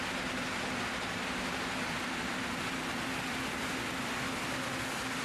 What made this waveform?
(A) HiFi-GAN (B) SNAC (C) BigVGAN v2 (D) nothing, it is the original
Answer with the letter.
D